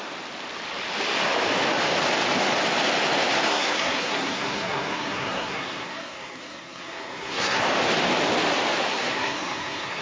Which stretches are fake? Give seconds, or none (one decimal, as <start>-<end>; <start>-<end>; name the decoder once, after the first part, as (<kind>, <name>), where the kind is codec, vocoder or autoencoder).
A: 3.5-7.6 (codec, SNAC); 8.9-10.0